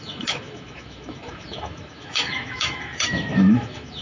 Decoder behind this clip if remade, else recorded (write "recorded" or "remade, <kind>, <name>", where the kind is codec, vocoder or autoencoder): remade, autoencoder, DAC-VAE